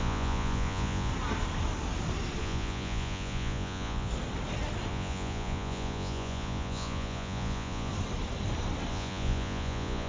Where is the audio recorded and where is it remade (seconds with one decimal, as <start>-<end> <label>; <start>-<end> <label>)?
0.0-1.1 remade; 1.1-2.4 recorded; 2.4-4.1 remade; 4.1-4.9 recorded; 4.9-7.9 remade; 7.9-8.9 recorded; 8.9-10.1 remade